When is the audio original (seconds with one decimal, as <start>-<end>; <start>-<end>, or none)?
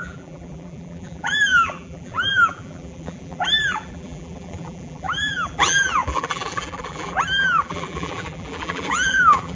none